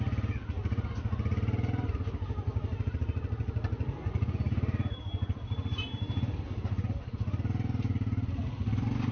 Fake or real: real